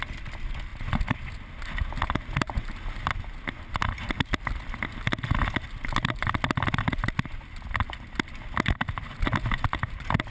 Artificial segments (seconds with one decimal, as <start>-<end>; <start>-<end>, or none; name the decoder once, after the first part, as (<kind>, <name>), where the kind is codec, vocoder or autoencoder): none